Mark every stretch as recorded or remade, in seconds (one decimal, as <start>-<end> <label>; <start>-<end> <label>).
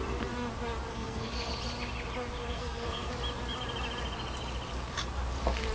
0.0-0.9 recorded; 0.9-1.5 remade; 1.5-2.4 recorded; 2.4-3.1 remade; 3.1-5.7 recorded